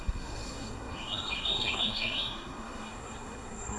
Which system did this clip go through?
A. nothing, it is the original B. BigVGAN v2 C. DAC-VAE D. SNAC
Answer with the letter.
D